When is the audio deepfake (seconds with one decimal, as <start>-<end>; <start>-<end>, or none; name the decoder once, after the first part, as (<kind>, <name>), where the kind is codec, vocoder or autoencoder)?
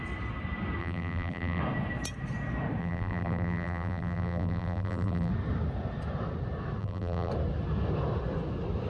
0.8-1.6 (vocoder, BigVGAN v2); 2.8-5.3; 6.8-7.3